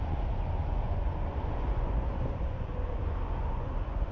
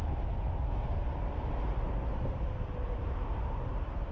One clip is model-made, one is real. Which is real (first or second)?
second